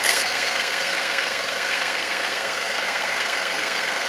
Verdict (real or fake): fake